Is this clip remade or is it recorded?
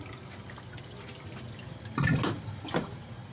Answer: recorded